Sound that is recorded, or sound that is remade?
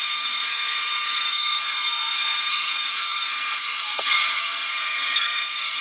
remade